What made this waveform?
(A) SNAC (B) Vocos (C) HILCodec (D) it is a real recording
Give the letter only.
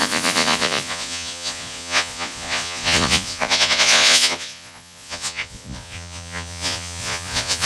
B